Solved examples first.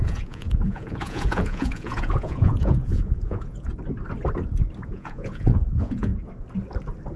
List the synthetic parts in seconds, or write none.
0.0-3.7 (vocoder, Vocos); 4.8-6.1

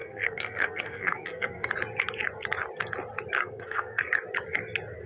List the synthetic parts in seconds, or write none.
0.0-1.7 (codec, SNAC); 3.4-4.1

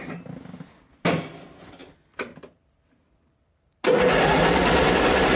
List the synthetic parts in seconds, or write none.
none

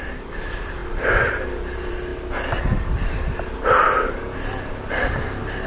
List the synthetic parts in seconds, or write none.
0.0-0.8 (vocoder, BigVGAN v2); 1.3-5.7

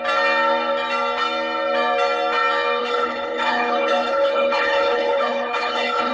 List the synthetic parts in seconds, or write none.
2.8-6.1 (codec, HILCodec)